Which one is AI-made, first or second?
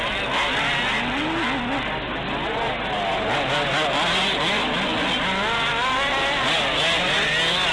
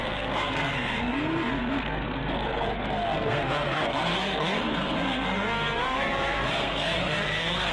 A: second